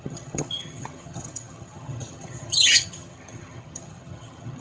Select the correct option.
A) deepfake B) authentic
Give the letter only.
A